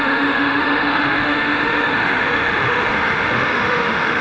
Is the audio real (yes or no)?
no